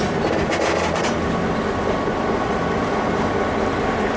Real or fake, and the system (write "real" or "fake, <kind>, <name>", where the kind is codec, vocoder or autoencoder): fake, vocoder, BigVGAN v2